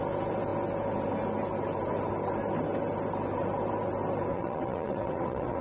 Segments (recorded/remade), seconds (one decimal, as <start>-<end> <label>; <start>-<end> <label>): 0.0-4.3 recorded; 4.3-5.6 remade